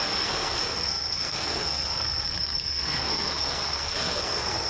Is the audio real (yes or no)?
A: no